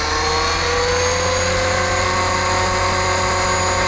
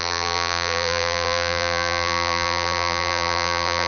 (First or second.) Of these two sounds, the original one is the first